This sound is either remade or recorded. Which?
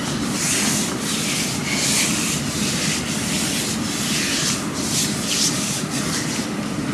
recorded